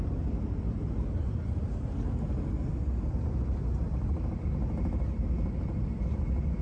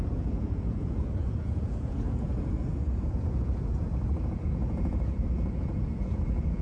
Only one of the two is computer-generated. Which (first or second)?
second